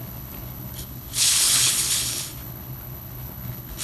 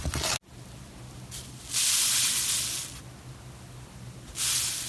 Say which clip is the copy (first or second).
first